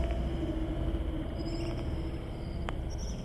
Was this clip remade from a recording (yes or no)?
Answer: no